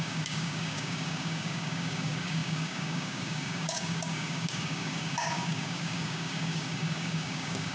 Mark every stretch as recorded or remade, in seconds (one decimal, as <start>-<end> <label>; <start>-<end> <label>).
0.0-7.7 remade

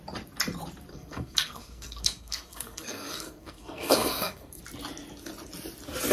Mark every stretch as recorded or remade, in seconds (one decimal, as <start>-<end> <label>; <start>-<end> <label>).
0.0-0.9 recorded; 0.9-4.6 remade; 4.6-6.1 recorded